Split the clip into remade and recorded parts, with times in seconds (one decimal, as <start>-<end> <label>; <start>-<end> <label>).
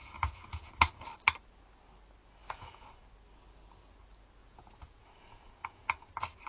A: 0.0-0.7 remade; 0.7-2.4 recorded; 2.4-3.0 remade; 3.0-4.4 recorded; 4.4-6.1 remade; 6.1-6.5 recorded